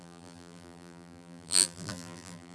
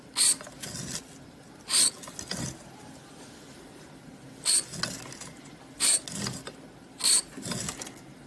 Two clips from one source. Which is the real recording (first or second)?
second